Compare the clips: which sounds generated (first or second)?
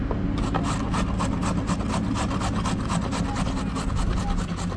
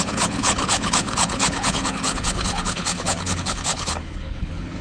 second